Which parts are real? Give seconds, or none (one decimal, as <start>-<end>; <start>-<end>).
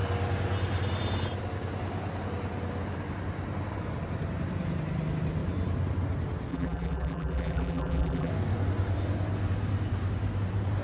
0.0-6.5; 8.3-10.8